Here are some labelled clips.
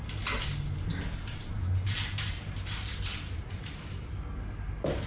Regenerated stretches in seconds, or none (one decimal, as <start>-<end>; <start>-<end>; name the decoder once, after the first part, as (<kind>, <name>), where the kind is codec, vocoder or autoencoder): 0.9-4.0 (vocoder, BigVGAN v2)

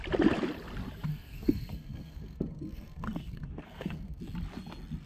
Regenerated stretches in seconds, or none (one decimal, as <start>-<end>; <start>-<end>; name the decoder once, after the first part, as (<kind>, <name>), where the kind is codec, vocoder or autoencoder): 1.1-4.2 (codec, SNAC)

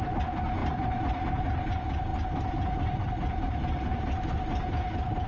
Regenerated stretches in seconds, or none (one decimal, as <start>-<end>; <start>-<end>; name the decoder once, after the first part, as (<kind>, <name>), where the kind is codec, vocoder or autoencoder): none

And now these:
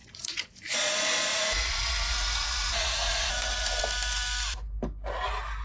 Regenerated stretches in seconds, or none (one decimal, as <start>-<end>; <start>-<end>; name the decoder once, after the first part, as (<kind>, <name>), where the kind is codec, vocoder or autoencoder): 0.0-0.6 (vocoder, Vocos); 1.3-3.8

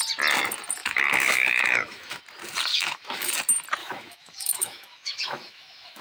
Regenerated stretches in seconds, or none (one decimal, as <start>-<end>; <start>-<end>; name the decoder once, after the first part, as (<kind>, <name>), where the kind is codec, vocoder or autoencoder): 0.8-2.2 (autoencoder, DAC-VAE); 2.7-3.3; 3.8-6.0

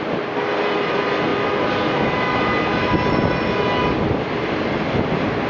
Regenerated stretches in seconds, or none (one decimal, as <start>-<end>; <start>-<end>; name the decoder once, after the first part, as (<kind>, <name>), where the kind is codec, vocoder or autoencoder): none